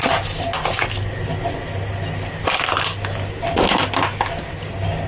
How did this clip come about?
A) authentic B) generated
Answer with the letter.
A